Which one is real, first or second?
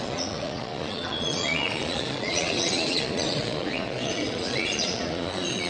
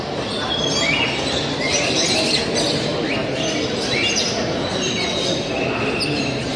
second